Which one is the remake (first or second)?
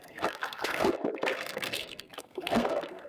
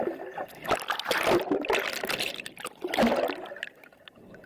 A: first